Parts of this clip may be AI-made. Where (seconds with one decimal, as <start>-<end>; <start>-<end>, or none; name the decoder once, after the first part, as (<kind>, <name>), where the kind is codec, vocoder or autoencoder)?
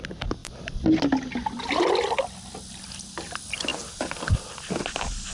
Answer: 0.4-1.0 (vocoder, BigVGAN v2)